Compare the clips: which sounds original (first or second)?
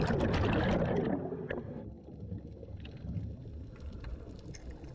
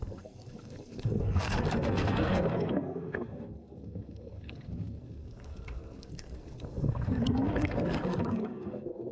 first